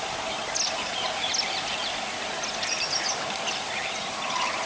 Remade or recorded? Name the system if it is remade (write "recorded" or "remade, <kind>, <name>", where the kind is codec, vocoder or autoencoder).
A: recorded